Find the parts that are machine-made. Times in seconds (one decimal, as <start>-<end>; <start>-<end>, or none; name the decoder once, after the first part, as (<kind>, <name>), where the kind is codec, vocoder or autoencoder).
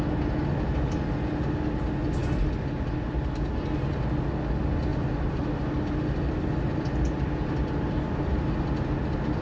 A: 4.9-8.5 (vocoder, BigVGAN v2)